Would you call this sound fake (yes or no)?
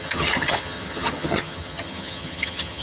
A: yes